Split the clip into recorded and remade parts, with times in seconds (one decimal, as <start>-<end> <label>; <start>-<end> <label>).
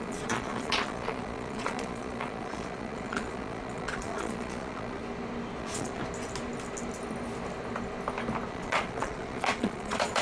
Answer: 0.0-5.0 remade; 5.0-5.6 recorded; 5.6-6.0 remade; 6.0-8.5 recorded; 8.5-10.2 remade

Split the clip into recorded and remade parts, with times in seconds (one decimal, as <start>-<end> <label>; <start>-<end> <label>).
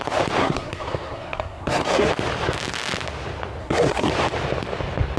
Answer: 0.0-0.4 recorded; 0.4-2.1 remade; 2.1-3.6 recorded; 3.6-4.1 remade; 4.1-5.2 recorded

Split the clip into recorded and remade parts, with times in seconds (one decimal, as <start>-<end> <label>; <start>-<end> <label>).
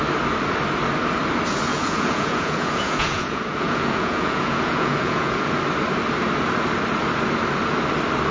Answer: 0.0-1.7 recorded; 1.7-5.5 remade; 5.5-8.3 recorded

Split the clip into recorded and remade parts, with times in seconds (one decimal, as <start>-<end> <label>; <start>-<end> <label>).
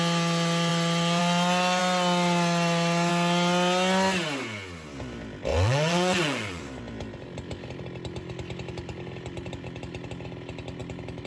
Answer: 0.0-5.5 recorded; 5.5-6.6 remade; 6.6-11.3 recorded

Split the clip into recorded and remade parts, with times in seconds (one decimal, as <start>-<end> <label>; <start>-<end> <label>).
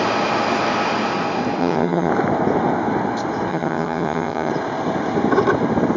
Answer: 0.0-1.6 recorded; 1.6-2.1 remade; 2.1-3.5 recorded; 3.5-4.5 remade; 4.5-6.0 recorded